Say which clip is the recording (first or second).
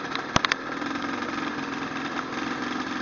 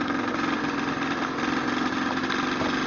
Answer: second